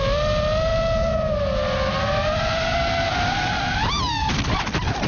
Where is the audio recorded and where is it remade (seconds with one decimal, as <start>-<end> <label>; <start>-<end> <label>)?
0.0-5.1 recorded